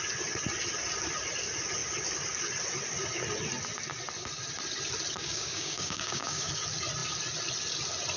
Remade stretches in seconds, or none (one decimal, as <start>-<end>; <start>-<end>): 5.2-6.5